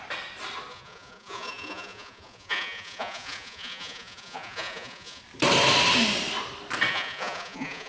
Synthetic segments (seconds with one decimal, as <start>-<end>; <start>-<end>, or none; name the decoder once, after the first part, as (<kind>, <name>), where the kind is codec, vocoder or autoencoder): 0.7-5.2 (vocoder, Vocos); 6.9-7.9